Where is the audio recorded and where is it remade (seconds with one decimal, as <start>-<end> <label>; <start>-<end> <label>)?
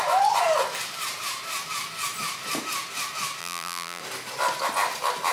0.0-3.4 recorded; 3.4-4.0 remade; 4.0-5.3 recorded